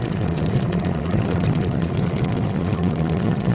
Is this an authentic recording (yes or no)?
no